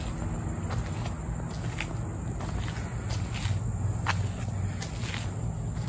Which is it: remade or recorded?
recorded